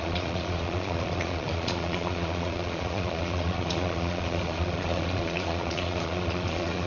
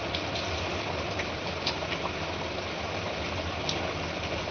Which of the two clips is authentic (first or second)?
second